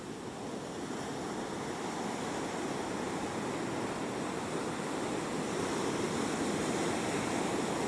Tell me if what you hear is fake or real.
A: real